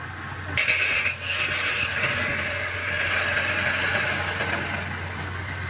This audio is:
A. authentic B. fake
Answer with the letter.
A